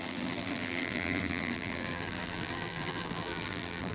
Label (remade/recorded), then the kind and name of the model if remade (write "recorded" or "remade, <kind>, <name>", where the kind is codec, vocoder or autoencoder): remade, vocoder, BigVGAN v2